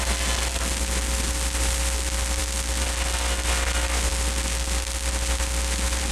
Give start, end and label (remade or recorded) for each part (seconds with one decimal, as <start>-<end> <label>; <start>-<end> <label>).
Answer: 0.0-6.1 recorded